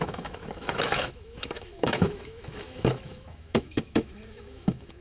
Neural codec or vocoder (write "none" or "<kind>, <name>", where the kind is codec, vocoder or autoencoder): autoencoder, DAC-VAE